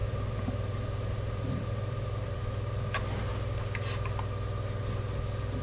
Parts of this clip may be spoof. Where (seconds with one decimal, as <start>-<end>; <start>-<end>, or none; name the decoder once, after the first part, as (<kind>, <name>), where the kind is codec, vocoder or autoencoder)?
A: 0.0-2.4 (vocoder, BigVGAN v2)